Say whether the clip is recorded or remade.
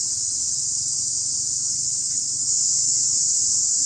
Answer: recorded